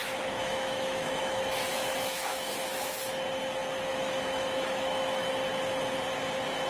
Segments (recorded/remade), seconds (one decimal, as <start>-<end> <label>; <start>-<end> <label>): 0.0-3.1 remade; 3.1-3.9 recorded; 3.9-5.3 remade; 5.3-6.7 recorded